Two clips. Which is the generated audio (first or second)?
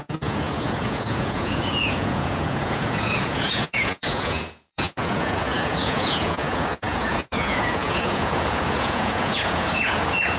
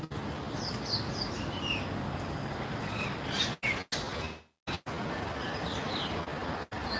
first